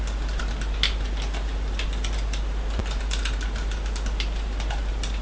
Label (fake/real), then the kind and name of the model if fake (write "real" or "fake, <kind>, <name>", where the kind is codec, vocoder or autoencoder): real